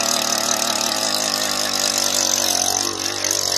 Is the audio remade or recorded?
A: recorded